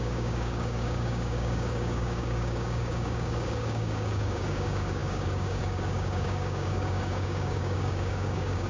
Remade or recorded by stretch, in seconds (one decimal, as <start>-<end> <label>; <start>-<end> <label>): 0.0-8.7 remade